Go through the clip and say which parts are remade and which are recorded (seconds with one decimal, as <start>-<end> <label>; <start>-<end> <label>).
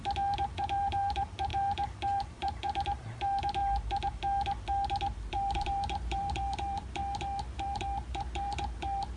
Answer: 0.0-3.6 remade; 3.6-5.2 recorded; 5.2-9.2 remade